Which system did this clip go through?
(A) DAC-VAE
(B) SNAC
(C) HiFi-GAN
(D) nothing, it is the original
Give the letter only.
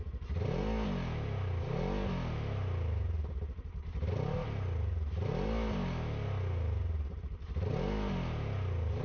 D